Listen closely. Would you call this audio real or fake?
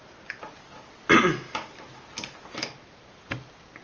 real